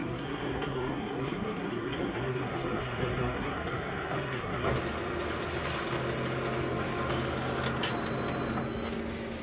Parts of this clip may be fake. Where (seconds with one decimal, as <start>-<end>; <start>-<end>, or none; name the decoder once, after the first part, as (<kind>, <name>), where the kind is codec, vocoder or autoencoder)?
0.0-4.7 (codec, SNAC)